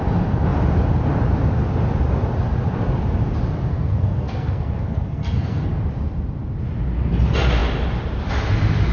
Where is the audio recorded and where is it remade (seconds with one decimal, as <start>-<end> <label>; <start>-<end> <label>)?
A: 0.0-3.7 recorded; 3.7-5.8 remade; 5.8-8.9 recorded